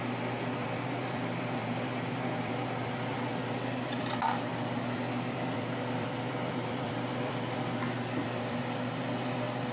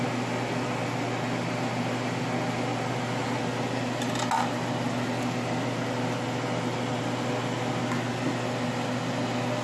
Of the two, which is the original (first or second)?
second